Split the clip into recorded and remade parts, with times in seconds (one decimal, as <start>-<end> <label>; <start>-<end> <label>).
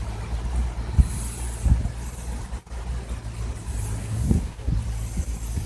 0.0-4.0 recorded; 4.0-4.7 remade; 4.7-5.7 recorded